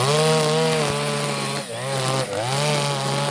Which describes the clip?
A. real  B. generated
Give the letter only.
A